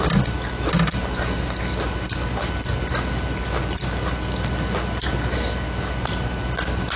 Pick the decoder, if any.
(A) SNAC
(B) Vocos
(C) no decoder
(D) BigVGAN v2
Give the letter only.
C